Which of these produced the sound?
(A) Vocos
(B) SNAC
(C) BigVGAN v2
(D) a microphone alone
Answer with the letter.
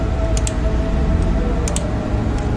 D